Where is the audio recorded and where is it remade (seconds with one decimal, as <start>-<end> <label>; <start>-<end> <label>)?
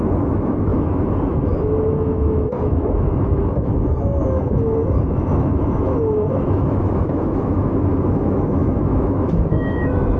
0.0-10.2 remade